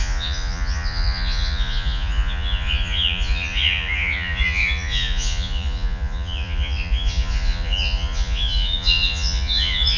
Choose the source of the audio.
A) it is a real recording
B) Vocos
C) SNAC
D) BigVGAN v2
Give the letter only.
B